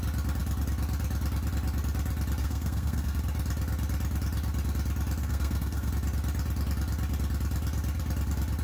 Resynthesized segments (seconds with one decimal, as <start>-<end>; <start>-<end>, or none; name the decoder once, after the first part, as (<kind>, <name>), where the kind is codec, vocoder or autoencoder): 2.4-3.2 (codec, SNAC); 5.2-5.9